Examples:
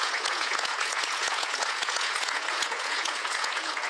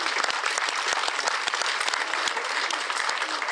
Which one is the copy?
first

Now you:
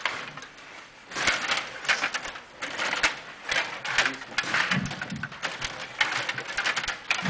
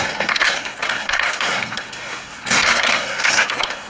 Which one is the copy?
second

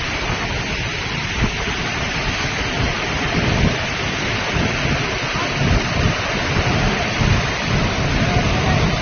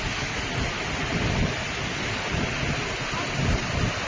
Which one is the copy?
first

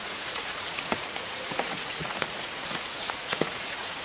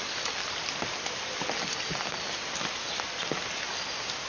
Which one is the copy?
first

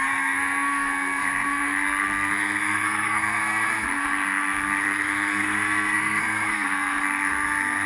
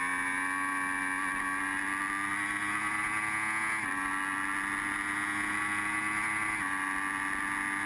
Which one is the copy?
first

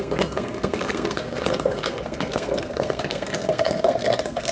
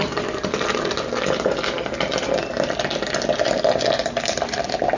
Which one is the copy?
first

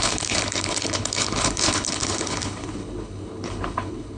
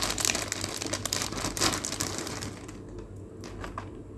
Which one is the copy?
first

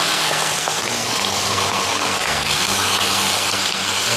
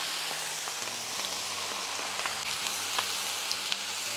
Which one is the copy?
first